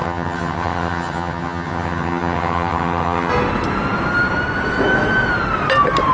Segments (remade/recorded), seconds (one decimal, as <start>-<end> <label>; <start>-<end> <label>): 0.0-3.3 remade; 3.3-6.1 recorded